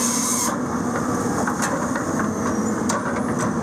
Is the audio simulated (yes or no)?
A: no